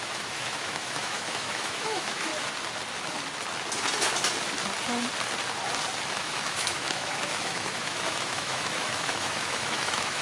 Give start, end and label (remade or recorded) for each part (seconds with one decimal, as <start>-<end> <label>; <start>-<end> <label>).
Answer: 0.0-2.3 remade; 2.3-6.1 recorded; 6.1-10.2 remade